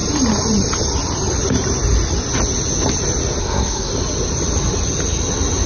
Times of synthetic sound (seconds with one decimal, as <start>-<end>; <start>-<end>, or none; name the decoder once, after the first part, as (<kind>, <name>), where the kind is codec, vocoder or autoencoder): 3.4-3.9 (codec, SNAC)